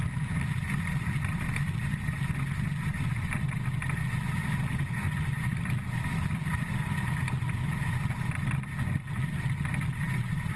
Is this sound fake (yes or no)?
no